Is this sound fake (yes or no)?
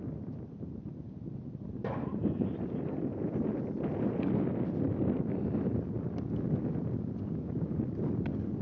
no